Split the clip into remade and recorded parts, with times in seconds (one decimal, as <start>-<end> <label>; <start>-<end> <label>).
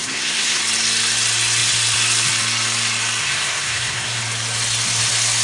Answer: 0.0-0.6 remade; 0.6-3.2 recorded; 3.2-4.2 remade; 4.2-5.4 recorded